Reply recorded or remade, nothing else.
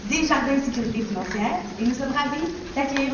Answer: remade